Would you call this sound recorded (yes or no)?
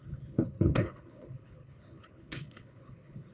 no